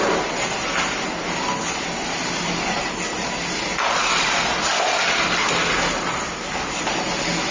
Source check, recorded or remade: recorded